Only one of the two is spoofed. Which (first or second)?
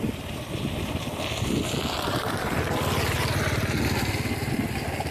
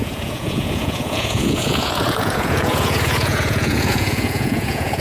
second